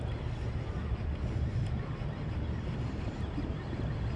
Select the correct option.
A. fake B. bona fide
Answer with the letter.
B